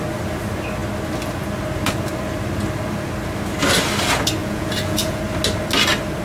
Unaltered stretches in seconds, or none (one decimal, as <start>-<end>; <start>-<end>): 0.0-4.4; 5.2-6.2